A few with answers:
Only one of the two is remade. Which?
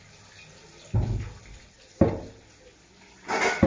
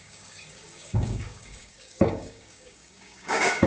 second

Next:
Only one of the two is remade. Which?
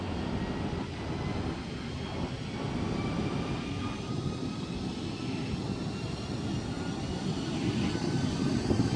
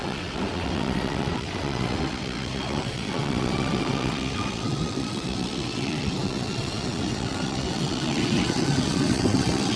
second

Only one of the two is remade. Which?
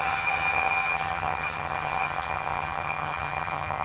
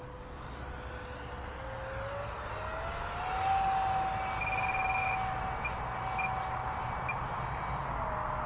first